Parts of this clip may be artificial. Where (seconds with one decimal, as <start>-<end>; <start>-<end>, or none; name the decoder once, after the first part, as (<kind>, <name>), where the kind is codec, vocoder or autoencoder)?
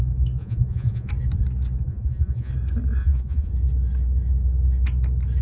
0.4-1.1 (vocoder, Vocos); 1.9-2.5; 3.0-3.5